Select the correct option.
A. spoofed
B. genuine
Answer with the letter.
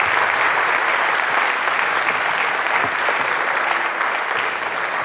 B